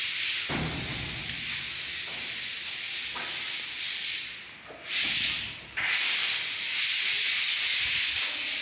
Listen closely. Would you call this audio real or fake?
real